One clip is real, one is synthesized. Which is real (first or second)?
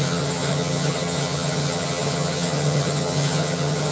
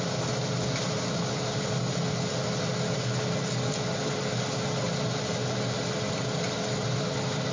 second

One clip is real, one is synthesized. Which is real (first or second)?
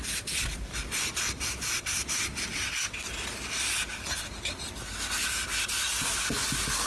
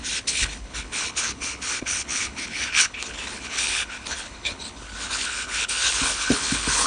first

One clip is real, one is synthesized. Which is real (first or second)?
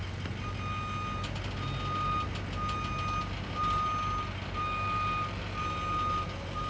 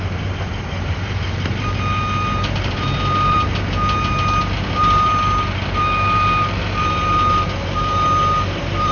first